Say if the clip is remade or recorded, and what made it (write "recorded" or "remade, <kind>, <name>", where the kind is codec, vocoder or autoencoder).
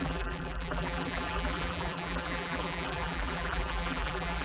remade, vocoder, BigVGAN v2